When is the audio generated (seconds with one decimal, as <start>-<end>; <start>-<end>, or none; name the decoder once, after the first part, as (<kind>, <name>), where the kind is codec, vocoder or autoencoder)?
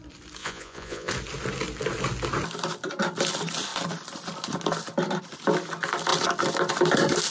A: 0.4-1.1 (vocoder, Vocos)